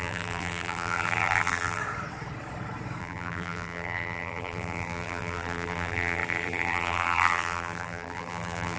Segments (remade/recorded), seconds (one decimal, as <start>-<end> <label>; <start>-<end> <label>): 0.0-1.8 remade; 1.8-3.0 recorded; 3.0-8.8 remade